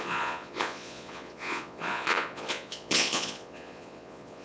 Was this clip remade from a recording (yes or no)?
yes